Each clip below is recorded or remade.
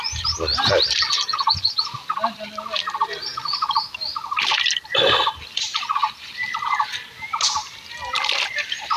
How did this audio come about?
recorded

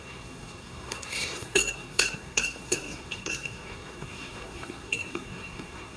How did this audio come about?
remade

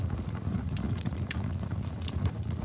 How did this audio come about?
remade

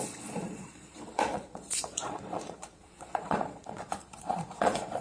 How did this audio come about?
remade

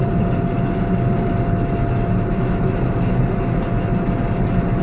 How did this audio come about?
recorded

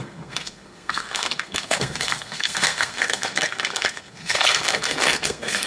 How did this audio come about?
remade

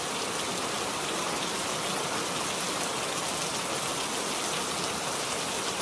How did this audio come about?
recorded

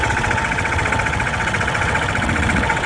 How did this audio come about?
remade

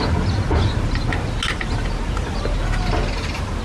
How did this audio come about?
recorded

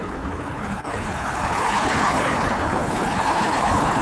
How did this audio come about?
remade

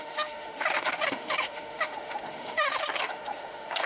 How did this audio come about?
remade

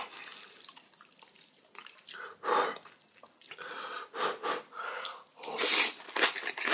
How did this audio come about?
recorded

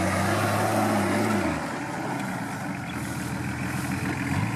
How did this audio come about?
recorded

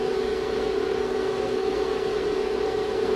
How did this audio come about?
remade